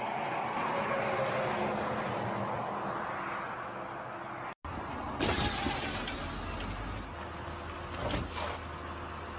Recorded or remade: recorded